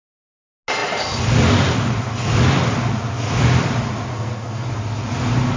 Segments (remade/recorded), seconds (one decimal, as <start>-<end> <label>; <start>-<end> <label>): 0.0-4.1 recorded; 4.1-4.7 remade; 4.7-5.6 recorded